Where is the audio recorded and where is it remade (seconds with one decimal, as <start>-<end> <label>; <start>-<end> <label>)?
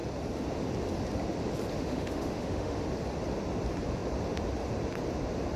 0.0-1.7 recorded; 1.7-2.8 remade; 2.8-5.6 recorded